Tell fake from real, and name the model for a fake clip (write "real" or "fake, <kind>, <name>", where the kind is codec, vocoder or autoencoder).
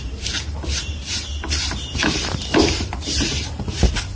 fake, vocoder, BigVGAN v2